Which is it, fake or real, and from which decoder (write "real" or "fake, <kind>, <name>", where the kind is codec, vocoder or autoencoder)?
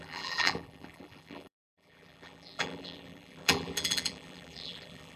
fake, vocoder, BigVGAN v2